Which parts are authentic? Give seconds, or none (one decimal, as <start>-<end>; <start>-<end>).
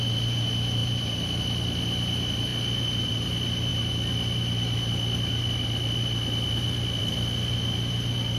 0.0-8.4